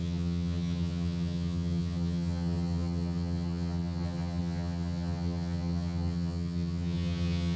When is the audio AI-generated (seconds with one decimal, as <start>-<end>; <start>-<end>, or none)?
0.0-7.6